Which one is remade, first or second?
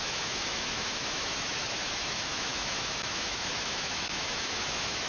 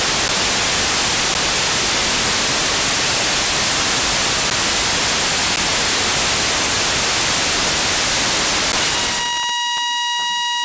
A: first